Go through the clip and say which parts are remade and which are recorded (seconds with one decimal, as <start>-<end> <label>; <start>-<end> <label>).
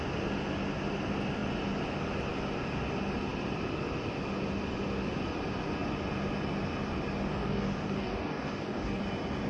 0.0-7.3 recorded; 7.3-9.0 remade; 9.0-9.5 recorded